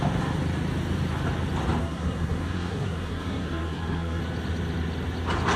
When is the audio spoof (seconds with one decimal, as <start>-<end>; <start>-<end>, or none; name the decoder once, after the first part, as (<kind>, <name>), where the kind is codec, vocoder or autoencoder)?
1.8-4.2 (codec, SNAC)